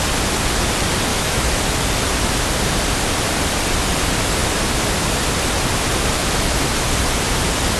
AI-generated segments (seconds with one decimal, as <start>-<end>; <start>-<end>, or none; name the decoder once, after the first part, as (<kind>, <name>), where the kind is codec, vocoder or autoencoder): 1.1-1.6 (autoencoder, DAC-VAE)